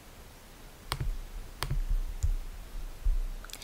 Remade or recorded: remade